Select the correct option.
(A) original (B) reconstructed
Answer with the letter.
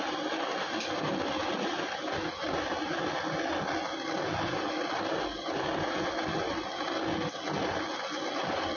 A